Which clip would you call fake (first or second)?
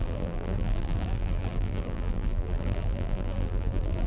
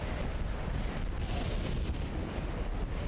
first